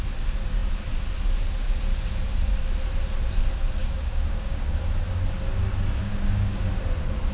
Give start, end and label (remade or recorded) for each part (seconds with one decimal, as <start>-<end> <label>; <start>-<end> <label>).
0.0-3.8 recorded; 3.8-4.8 remade; 4.8-6.1 recorded; 6.1-6.7 remade; 6.7-7.3 recorded